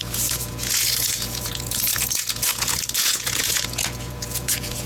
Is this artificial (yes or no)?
yes